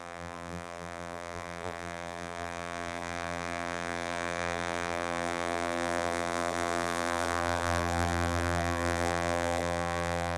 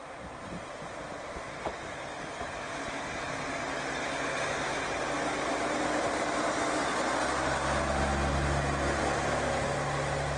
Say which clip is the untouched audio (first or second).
second